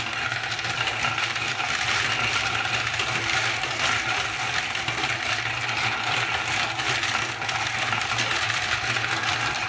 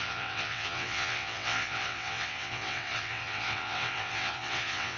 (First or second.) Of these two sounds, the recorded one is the first